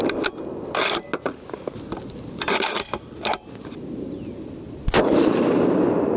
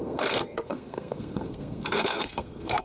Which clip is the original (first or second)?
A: first